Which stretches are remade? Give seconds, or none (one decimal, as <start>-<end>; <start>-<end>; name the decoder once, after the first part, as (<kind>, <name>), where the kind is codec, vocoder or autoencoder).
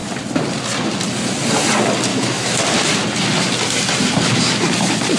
2.1-2.6 (autoencoder, DAC-VAE)